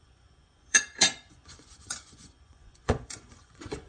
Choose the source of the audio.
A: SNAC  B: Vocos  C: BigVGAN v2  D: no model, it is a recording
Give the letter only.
B